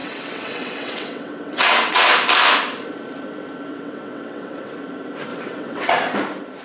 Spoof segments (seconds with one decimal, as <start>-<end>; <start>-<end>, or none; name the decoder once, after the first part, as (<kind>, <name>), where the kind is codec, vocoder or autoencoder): 0.0-2.1 (vocoder, WaveNeXt); 3.7-4.7; 5.3-5.9